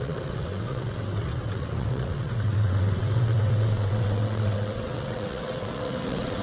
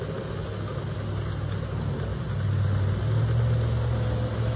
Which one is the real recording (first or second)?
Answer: second